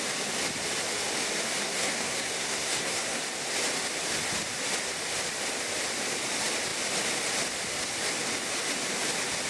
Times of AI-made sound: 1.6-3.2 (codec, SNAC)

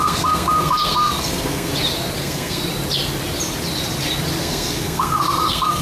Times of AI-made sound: 0.0-1.7 (codec, SNAC); 2.2-2.6; 4.4-5.8

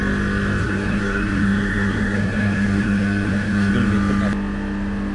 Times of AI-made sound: 0.6-3.7 (codec, SNAC)